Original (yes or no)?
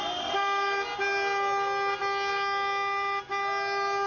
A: yes